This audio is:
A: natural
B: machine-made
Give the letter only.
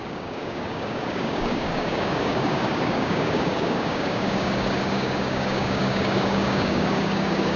B